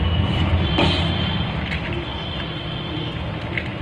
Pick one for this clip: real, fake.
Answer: real